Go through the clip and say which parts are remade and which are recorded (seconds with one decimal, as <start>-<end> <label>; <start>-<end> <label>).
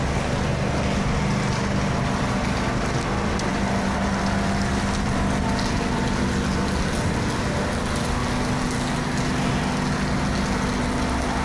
0.0-11.4 recorded